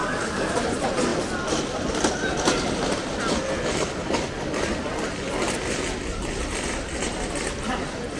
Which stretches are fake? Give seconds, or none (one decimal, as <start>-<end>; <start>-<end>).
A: 0.0-0.5